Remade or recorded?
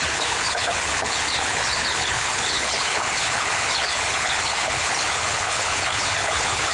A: remade